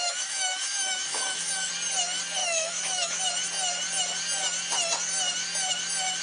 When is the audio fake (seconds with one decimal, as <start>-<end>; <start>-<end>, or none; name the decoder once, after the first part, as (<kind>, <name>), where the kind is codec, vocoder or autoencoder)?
0.0-1.7 (autoencoder, DAC-VAE); 2.4-3.2